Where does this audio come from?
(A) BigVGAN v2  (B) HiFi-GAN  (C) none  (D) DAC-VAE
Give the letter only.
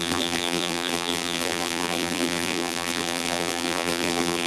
A